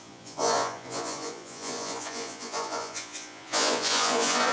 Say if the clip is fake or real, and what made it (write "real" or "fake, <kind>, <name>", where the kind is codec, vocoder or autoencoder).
fake, vocoder, Vocos